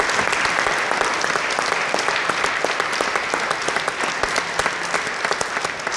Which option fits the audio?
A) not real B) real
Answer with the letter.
B